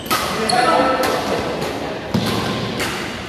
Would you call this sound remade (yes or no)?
no